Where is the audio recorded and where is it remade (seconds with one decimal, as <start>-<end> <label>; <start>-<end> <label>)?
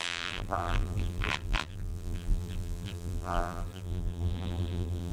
0.0-5.1 remade